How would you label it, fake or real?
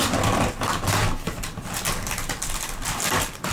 real